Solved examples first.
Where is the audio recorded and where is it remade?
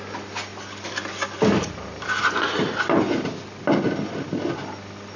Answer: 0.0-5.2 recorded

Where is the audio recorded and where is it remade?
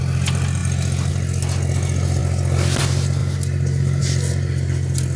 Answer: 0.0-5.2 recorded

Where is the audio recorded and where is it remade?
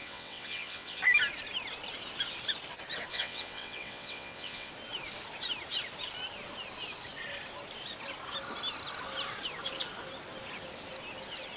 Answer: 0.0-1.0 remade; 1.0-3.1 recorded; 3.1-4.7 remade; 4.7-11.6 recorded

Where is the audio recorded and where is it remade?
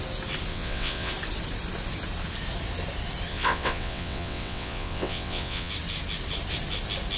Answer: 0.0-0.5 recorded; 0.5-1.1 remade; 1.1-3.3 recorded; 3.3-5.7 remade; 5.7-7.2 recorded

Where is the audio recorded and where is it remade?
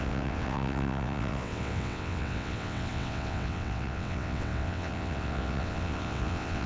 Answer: 0.0-6.7 remade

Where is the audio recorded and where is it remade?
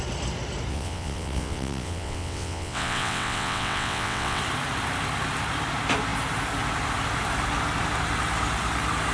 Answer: 0.0-0.7 recorded; 0.7-4.4 remade; 4.4-9.1 recorded